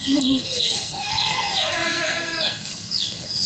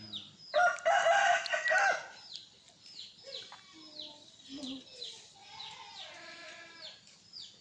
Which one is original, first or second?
second